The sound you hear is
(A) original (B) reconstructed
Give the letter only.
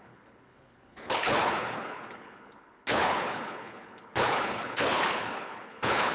B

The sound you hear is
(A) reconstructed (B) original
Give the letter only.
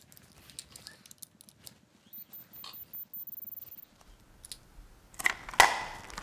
B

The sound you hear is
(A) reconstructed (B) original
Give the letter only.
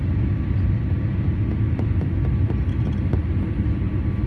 B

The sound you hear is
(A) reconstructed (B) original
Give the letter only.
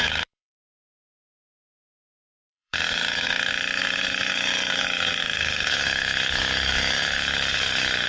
A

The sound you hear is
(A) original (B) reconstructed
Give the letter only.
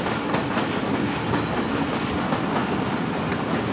A